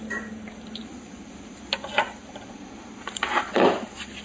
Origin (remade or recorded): recorded